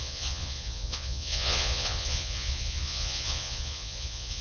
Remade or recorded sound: remade